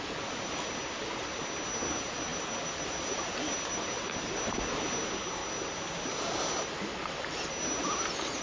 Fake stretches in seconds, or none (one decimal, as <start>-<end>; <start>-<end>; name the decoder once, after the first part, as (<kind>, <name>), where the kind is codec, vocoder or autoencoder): none